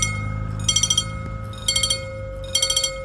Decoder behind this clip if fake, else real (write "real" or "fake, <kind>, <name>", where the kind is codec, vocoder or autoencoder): real